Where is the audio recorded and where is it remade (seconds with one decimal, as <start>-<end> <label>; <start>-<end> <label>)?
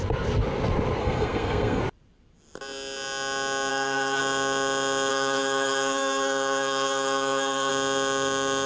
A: 0.0-1.0 recorded; 1.0-1.8 remade; 1.8-3.7 recorded; 3.7-4.2 remade; 4.2-5.1 recorded; 5.1-7.7 remade; 7.7-8.7 recorded